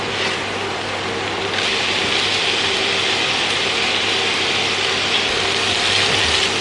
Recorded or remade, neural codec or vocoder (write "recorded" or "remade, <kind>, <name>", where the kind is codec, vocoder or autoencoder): recorded